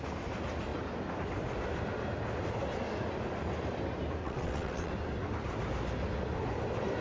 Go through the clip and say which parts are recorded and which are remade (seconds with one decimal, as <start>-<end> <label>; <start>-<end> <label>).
0.0-4.2 recorded; 4.2-4.9 remade; 4.9-7.0 recorded